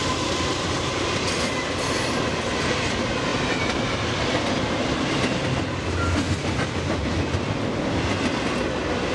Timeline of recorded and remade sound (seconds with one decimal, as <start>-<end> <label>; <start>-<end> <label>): 0.0-9.1 recorded